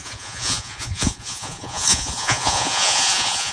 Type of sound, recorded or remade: remade